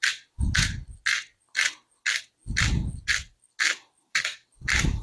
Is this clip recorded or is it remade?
recorded